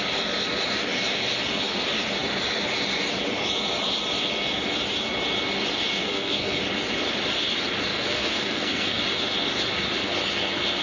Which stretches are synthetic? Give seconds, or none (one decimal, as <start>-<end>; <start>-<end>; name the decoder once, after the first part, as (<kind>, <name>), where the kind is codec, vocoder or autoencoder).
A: 6.0-6.6 (codec, SNAC); 7.9-9.0